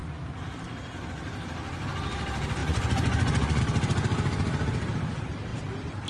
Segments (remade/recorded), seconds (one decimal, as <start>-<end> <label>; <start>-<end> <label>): 0.0-2.6 recorded; 2.6-3.6 remade; 3.6-6.1 recorded